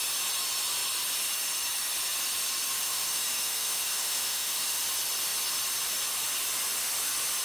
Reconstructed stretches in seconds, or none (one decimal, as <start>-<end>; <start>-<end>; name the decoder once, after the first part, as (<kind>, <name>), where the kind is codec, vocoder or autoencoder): 2.8-4.8 (autoencoder, DAC-VAE)